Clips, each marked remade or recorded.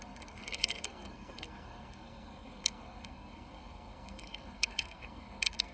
remade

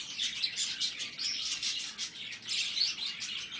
recorded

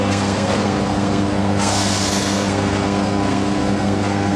remade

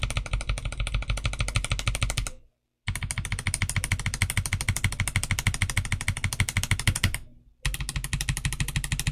recorded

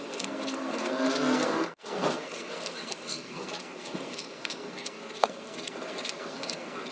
remade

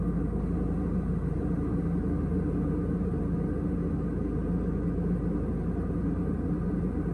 recorded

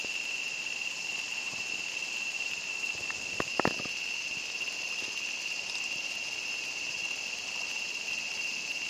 recorded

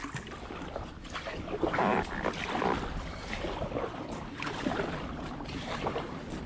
recorded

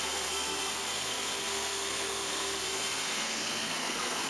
remade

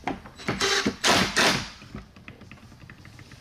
recorded